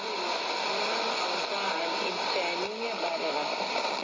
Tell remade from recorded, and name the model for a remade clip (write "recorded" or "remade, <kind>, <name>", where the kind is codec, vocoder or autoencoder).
recorded